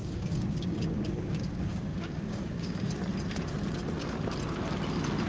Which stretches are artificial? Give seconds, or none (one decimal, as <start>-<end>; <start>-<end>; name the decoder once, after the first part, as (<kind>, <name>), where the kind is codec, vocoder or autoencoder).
0.0-2.9 (codec, DAC)